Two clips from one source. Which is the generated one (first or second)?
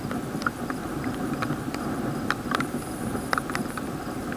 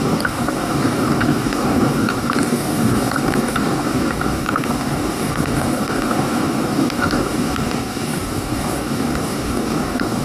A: second